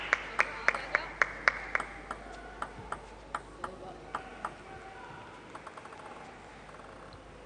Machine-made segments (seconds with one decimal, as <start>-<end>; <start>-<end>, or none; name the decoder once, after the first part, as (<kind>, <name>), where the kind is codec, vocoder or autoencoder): none